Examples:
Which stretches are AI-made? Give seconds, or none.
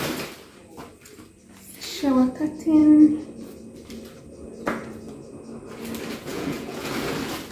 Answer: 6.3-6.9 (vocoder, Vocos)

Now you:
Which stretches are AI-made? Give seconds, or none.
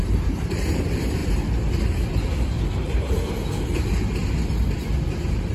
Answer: 0.0-4.2 (vocoder, BigVGAN v2)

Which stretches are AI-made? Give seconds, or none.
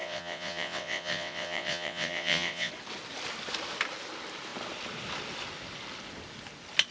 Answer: 0.0-2.7 (vocoder, WaveNeXt)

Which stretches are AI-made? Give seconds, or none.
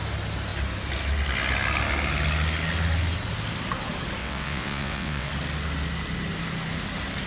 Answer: 4.2-5.3 (vocoder, WaveNeXt)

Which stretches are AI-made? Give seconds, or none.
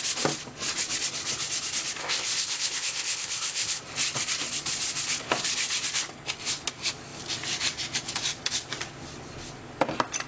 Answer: 2.0-3.8 (codec, ZipCodec)